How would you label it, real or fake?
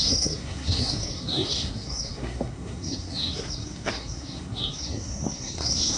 fake